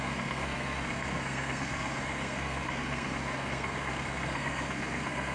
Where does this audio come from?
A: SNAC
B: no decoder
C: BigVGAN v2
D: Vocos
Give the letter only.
A